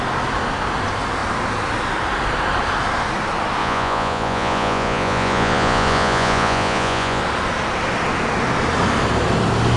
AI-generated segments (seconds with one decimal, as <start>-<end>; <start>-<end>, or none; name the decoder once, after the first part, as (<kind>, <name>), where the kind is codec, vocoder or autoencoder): 3.6-7.2 (vocoder, Vocos)